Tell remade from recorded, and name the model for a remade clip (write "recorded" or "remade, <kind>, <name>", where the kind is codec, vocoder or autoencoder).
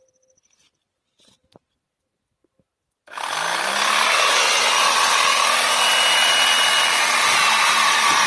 recorded